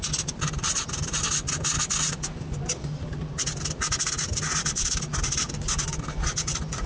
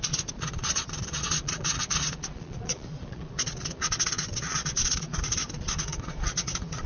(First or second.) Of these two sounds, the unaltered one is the first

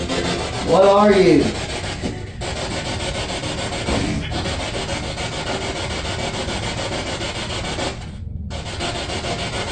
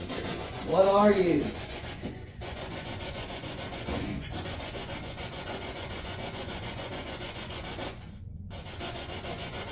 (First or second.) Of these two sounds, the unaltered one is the first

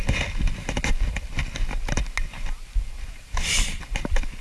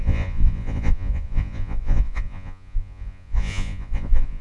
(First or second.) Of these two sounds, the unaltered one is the first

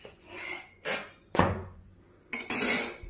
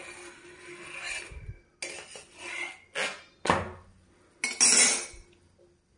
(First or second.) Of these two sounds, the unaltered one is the second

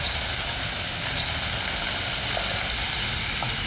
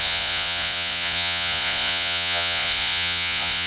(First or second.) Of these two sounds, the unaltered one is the first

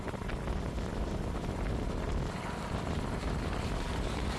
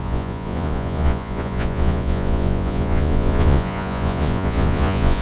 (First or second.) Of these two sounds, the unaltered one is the first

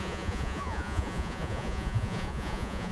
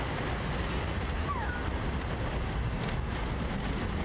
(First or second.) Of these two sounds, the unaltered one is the second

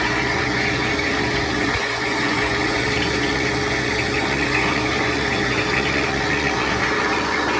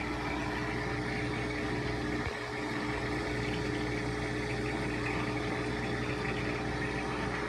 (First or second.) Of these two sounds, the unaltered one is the second